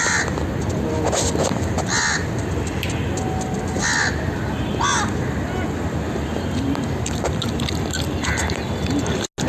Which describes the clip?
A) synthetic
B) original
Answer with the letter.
B